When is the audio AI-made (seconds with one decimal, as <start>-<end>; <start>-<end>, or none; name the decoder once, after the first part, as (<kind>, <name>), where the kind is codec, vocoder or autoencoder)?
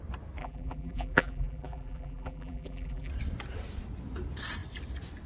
0.4-3.1 (vocoder, BigVGAN v2)